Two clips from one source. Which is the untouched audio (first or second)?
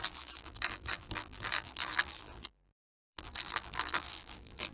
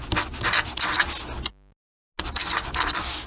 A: second